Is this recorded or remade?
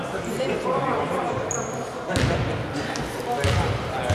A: recorded